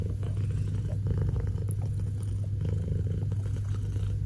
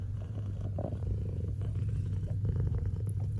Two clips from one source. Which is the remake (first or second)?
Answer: second